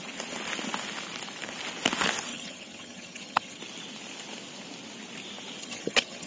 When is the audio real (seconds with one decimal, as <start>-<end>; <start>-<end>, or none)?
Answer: 0.0-2.3; 3.6-5.6